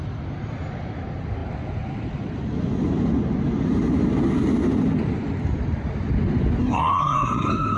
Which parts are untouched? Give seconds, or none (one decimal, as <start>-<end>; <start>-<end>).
0.0-6.6

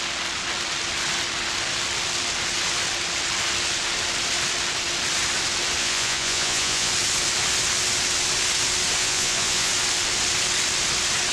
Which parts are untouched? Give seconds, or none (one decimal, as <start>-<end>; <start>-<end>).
0.0-5.8; 6.9-9.0; 9.7-11.3